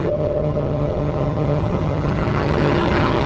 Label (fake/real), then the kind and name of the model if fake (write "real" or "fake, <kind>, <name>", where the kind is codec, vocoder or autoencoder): fake, vocoder, HiFi-GAN